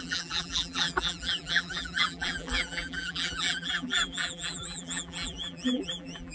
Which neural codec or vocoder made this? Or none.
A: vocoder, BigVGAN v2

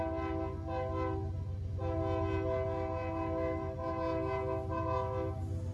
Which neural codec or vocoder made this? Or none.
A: none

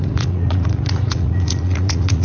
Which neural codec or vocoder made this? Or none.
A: vocoder, Vocos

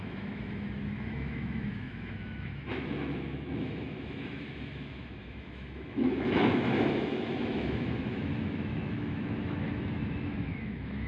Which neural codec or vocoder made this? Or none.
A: autoencoder, DAC-VAE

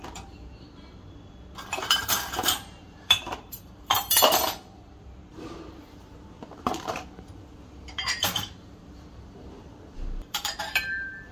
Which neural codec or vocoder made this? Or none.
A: vocoder, BigVGAN v2